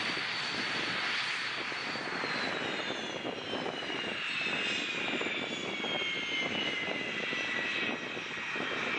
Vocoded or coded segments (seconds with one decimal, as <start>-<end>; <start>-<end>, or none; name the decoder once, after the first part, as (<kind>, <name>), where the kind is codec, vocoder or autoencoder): none